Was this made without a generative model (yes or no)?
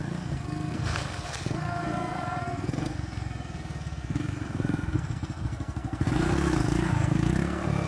no